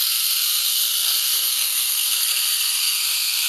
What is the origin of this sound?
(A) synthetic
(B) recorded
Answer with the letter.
A